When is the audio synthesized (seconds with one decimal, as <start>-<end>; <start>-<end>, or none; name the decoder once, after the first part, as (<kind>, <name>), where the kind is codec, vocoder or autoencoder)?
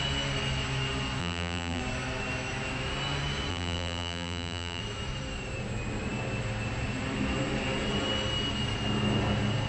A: 1.2-1.8 (vocoder, BigVGAN v2); 3.5-4.8